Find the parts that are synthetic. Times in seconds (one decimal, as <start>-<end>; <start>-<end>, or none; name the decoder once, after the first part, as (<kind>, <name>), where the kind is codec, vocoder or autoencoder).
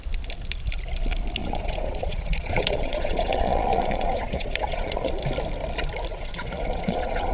1.4-5.1 (vocoder, Vocos); 6.1-7.3